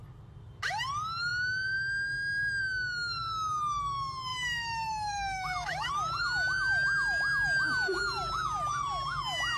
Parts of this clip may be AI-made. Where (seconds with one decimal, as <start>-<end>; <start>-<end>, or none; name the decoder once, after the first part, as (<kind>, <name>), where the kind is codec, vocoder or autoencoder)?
4.3-5.9 (autoencoder, DAC-VAE)